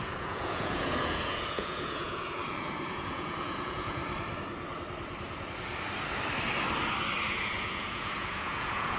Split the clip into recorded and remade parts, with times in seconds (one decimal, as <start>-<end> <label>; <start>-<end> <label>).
0.0-4.0 remade; 4.0-7.3 recorded; 7.3-9.0 remade

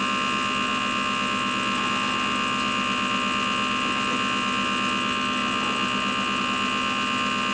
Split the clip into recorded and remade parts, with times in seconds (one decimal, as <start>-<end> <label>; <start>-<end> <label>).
0.0-7.5 recorded

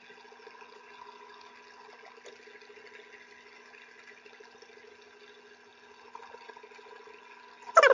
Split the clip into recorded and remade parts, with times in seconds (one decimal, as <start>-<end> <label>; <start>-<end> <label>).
0.0-7.9 recorded

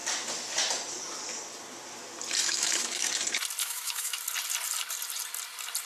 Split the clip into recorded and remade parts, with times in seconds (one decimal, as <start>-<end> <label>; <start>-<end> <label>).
0.0-2.4 recorded; 2.4-3.1 remade; 3.1-3.6 recorded; 3.6-4.2 remade; 4.2-5.9 recorded

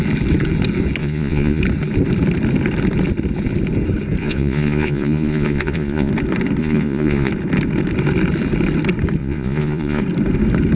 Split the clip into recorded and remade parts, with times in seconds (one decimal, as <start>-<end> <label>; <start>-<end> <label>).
0.0-1.0 recorded; 1.0-1.6 remade; 1.6-4.2 recorded; 4.2-6.1 remade; 6.1-6.6 recorded; 6.6-7.3 remade; 7.3-9.2 recorded; 9.2-10.0 remade; 10.0-10.8 recorded

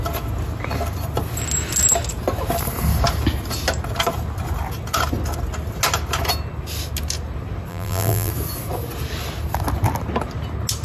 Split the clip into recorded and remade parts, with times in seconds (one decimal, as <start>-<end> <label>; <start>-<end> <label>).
0.0-7.7 recorded; 7.7-8.3 remade; 8.3-10.8 recorded

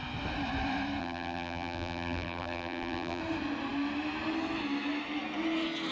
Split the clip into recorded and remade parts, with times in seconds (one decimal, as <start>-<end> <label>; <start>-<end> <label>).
0.0-1.0 recorded; 1.0-3.2 remade; 3.2-5.9 recorded

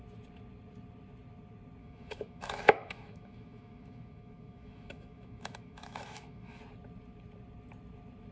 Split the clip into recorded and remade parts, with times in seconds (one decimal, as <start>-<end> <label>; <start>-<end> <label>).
0.0-1.8 recorded; 1.8-6.6 remade; 6.6-8.3 recorded